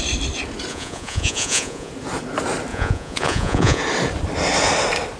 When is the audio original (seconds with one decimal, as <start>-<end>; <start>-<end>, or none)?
0.0-0.7; 1.9-2.7; 3.8-5.2